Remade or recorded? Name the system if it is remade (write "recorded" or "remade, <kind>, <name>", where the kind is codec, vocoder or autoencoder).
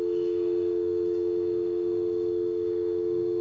remade, codec, SNAC